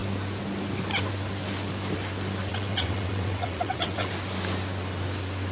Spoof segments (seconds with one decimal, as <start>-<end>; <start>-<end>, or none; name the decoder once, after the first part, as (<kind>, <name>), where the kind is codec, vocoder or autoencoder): 2.5-4.1 (vocoder, WaveNeXt)